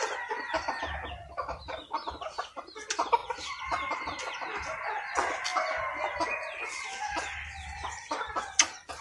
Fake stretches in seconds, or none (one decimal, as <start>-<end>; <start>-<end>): none